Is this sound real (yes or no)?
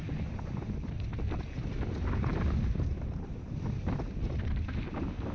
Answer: yes